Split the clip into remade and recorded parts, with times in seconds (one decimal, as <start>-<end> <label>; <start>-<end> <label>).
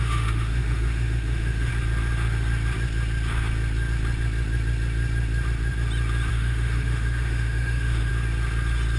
0.0-1.7 remade; 1.7-6.3 recorded; 6.3-8.1 remade; 8.1-9.0 recorded